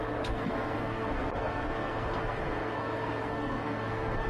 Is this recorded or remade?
remade